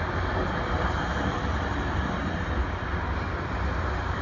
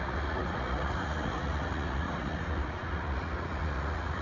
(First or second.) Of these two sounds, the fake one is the second